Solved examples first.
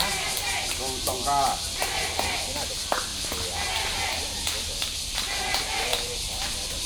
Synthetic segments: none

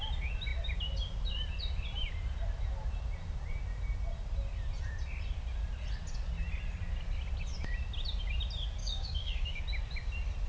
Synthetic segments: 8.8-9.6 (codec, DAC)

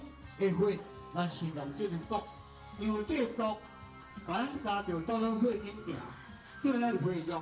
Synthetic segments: 0.8-3.3 (codec, SNAC); 4.1-4.5; 5.1-7.4

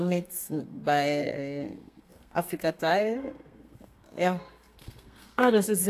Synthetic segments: 0.0-5.9 (codec, SNAC)

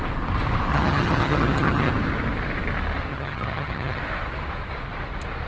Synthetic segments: 0.7-1.9 (vocoder, HiFi-GAN); 3.1-4.0

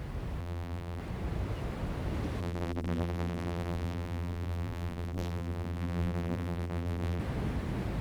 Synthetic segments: 0.4-1.0 (vocoder, BigVGAN v2); 2.4-7.2

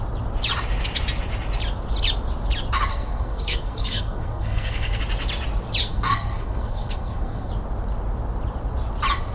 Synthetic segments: 2.9-5.0 (codec, SNAC); 5.8-7.5